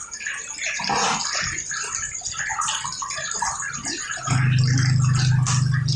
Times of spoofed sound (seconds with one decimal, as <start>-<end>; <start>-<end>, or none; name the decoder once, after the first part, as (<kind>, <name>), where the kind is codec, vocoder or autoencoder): none